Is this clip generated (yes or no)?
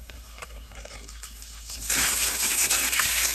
yes